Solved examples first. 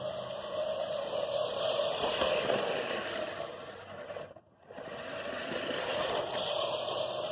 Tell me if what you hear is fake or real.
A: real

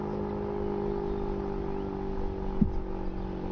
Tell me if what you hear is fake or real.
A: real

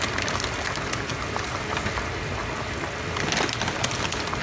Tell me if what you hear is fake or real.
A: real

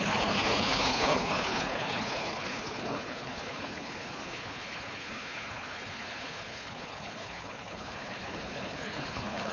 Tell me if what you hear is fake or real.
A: fake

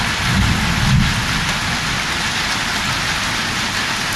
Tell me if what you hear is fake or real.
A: real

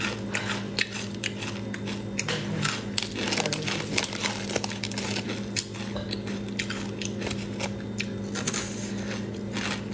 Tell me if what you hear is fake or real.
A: real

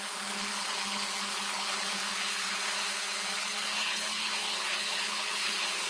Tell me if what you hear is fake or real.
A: fake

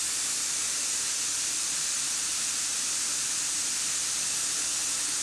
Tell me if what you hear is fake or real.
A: real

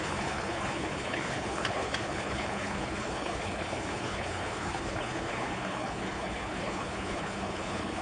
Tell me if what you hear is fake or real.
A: fake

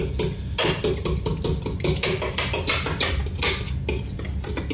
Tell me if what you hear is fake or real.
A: real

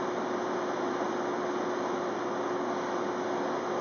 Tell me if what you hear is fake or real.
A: real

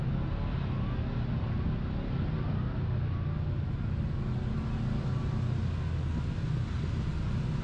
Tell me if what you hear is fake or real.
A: real